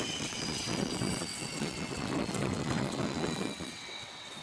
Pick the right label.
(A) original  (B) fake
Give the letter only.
B